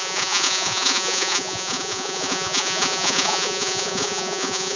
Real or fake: fake